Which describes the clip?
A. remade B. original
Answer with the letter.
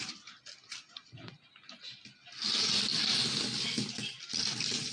B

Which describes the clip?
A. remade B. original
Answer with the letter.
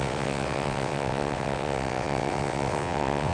A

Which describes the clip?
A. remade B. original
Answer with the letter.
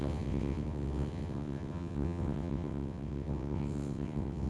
A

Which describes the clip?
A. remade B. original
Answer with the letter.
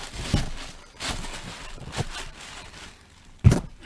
B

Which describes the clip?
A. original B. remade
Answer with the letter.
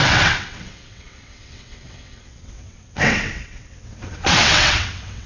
B